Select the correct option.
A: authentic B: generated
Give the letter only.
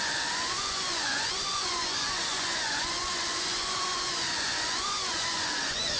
B